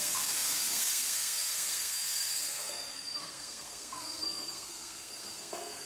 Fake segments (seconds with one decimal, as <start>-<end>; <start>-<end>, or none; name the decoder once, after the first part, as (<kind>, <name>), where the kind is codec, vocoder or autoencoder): 0.0-5.9 (codec, SNAC)